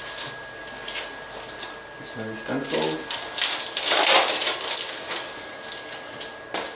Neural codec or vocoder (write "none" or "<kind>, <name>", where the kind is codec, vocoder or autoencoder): none